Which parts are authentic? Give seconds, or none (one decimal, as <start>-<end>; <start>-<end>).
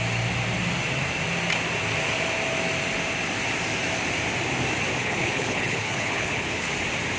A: 0.0-5.0; 6.7-7.2